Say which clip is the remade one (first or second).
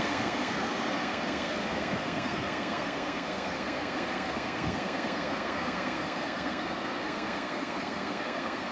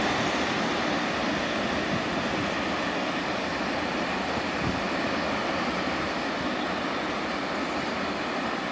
first